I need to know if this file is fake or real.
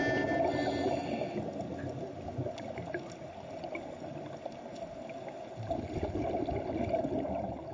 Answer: real